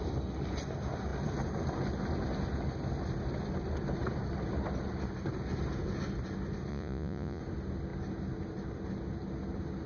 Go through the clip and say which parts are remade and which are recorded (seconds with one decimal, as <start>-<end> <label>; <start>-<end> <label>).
0.0-6.7 recorded; 6.7-7.4 remade; 7.4-9.9 recorded